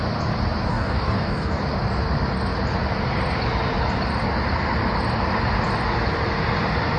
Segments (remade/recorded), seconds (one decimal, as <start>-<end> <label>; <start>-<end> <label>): 0.0-0.7 recorded; 0.7-1.6 remade; 1.6-7.0 recorded